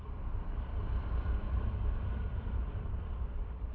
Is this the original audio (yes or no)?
no